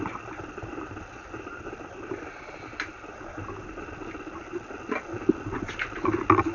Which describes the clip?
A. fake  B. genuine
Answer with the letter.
B